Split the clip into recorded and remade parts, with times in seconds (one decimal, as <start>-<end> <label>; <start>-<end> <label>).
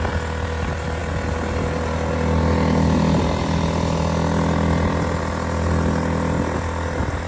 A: 0.0-7.3 recorded